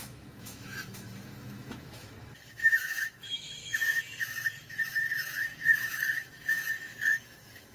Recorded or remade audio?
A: remade